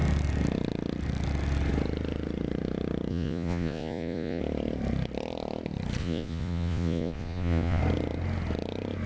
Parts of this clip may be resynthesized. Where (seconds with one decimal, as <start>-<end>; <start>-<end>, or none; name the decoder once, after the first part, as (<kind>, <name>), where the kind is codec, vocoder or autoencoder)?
3.1-4.4 (vocoder, Vocos); 6.0-7.8